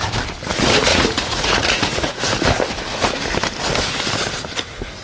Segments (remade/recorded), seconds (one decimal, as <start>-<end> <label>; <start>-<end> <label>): 0.0-0.9 recorded; 0.9-2.2 remade; 2.2-5.0 recorded